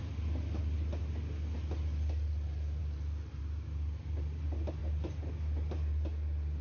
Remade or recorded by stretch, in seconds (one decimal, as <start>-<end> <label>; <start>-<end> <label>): 0.0-6.6 recorded